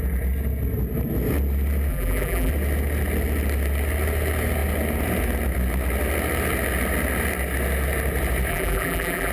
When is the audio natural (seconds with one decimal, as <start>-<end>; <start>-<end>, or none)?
0.0-1.9; 2.5-8.5